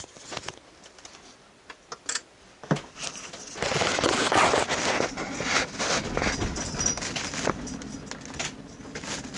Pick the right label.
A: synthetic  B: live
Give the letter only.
B